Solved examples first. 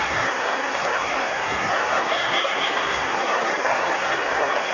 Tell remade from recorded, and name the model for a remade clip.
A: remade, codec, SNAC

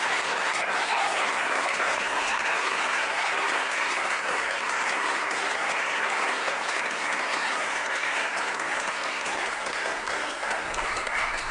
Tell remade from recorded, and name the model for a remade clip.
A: remade, codec, SNAC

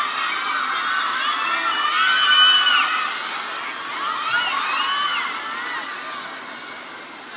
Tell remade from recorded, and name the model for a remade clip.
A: recorded